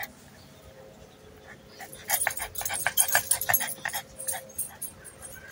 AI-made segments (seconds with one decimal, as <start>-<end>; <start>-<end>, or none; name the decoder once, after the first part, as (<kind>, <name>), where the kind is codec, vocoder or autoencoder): none